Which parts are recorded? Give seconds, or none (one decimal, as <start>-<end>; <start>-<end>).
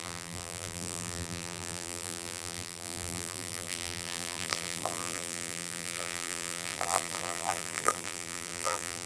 none